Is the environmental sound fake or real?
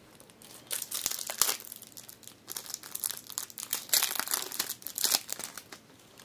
real